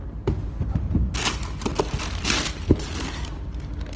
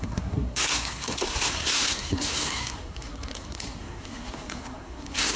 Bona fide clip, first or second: first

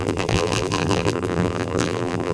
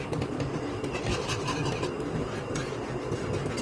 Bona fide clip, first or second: second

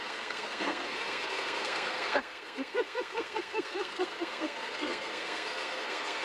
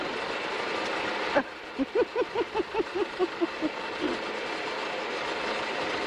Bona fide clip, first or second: second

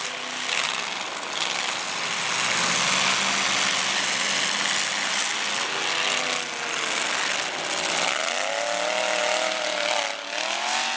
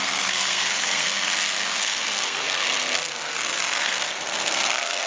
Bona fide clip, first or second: first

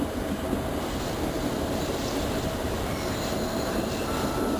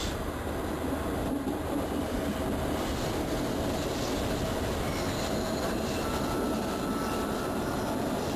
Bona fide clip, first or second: second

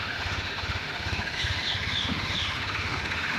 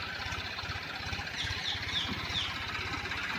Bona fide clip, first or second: second